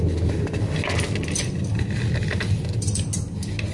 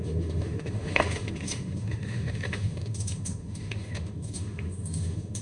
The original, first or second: first